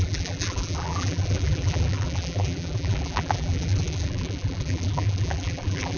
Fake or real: fake